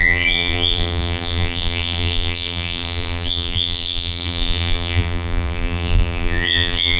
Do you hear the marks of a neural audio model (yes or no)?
yes